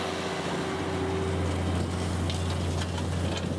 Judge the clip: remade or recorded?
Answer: recorded